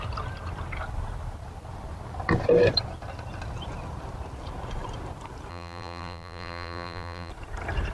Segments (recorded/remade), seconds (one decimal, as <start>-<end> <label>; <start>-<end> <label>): 0.0-5.5 recorded; 5.5-7.3 remade; 7.3-7.9 recorded